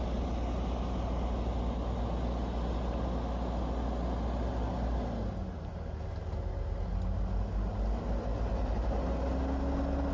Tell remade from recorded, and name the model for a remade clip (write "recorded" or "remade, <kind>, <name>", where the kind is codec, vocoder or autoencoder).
recorded